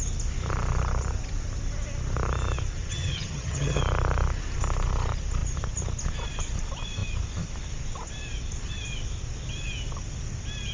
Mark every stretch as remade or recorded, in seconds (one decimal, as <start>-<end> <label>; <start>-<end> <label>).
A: 0.0-2.9 recorded; 2.9-3.8 remade; 3.8-10.7 recorded